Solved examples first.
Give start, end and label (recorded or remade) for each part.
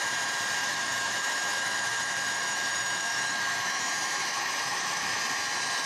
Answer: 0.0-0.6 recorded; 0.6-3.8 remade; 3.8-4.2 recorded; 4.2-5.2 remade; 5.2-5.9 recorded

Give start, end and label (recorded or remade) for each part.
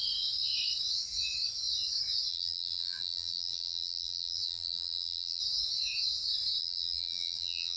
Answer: 0.0-2.3 recorded; 2.3-5.4 remade; 5.4-6.6 recorded; 6.6-7.8 remade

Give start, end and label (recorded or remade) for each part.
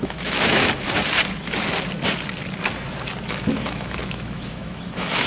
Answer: 0.0-0.6 remade; 0.6-3.3 recorded; 3.3-5.3 remade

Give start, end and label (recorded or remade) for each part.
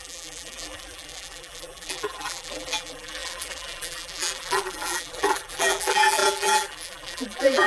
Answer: 0.0-7.7 remade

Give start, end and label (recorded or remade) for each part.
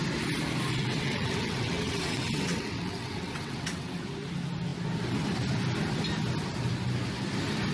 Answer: 0.0-0.7 recorded; 0.7-4.0 remade; 4.0-7.7 recorded